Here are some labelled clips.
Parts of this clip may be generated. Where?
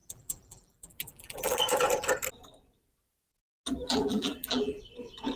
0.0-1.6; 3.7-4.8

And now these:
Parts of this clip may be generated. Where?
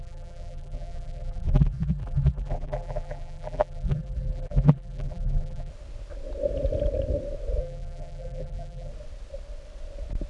0.0-5.7; 7.6-8.9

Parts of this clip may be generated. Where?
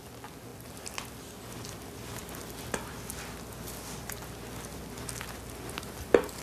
none